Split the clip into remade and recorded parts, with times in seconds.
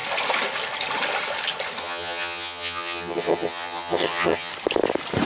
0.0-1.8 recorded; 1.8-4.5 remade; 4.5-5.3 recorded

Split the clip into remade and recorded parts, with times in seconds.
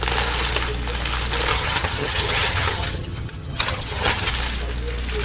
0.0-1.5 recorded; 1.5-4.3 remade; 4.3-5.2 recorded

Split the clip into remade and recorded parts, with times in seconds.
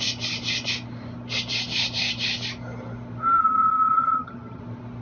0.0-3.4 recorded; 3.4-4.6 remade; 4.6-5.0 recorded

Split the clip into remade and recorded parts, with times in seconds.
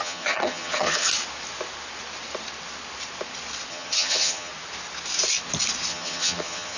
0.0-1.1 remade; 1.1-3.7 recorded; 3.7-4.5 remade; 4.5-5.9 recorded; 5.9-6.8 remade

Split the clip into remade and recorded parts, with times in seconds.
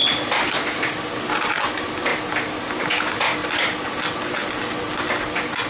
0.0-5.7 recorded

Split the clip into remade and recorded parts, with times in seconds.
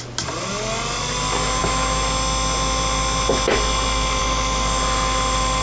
0.0-5.6 recorded